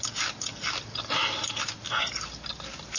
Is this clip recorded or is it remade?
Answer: recorded